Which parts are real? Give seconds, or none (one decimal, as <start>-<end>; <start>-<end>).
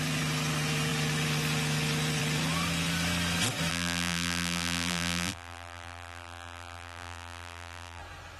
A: 0.0-3.7; 8.0-8.4